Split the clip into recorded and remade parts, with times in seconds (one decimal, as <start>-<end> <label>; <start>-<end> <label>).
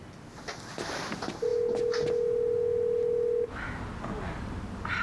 0.0-5.0 recorded